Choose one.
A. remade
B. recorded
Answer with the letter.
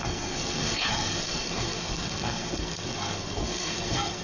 A